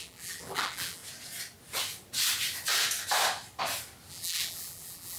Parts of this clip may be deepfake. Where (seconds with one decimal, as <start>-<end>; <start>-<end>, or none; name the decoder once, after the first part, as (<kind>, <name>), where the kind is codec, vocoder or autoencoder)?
0.0-1.0 (vocoder, BigVGAN v2); 4.1-5.2